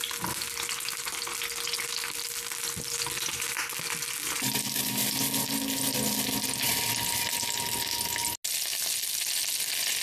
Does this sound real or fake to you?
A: real